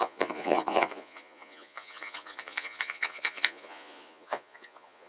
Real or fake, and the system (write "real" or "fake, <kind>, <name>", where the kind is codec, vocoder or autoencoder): fake, vocoder, Vocos